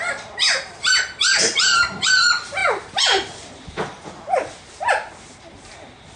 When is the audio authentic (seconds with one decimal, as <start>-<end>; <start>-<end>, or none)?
0.0-6.2